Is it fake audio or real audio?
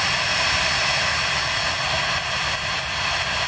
real